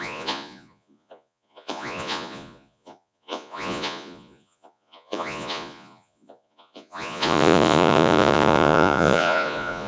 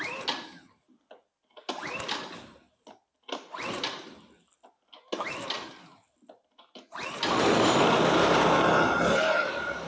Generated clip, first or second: first